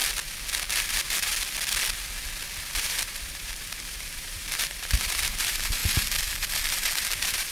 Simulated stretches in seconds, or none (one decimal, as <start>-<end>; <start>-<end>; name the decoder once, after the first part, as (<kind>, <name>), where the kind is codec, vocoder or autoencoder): 0.8-1.3 (vocoder, BigVGAN v2); 2.8-7.5